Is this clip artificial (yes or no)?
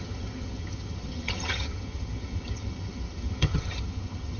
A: yes